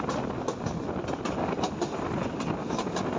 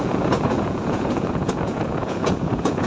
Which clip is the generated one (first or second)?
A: second